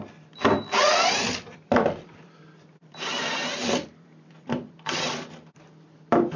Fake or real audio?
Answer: fake